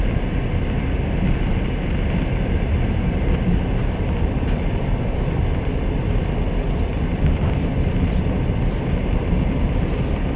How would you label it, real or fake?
fake